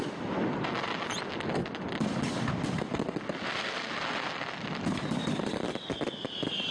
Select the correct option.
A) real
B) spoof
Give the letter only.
A